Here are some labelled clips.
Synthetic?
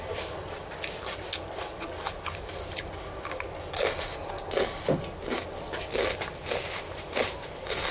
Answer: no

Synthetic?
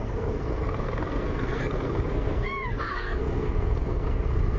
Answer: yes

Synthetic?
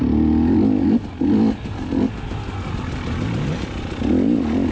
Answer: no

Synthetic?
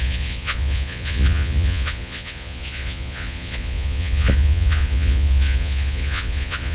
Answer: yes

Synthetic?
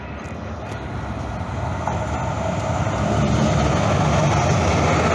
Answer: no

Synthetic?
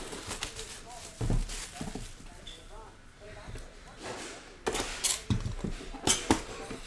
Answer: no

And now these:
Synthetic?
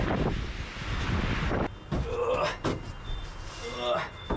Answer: no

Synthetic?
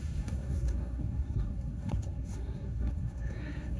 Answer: yes